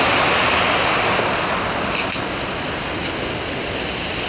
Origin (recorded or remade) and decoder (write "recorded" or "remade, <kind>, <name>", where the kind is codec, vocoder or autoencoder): recorded